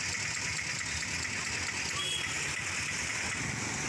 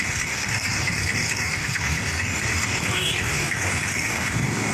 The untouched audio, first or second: first